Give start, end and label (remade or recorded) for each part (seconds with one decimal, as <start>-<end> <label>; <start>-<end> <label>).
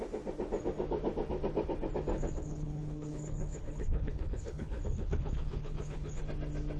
0.0-2.1 recorded; 2.1-6.2 remade; 6.2-6.8 recorded